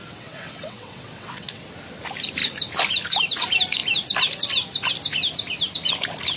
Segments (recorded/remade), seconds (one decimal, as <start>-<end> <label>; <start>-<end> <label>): 0.0-1.6 remade; 1.6-6.4 recorded

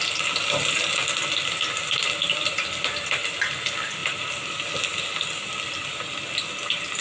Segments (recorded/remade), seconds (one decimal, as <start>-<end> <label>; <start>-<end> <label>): 0.0-7.0 recorded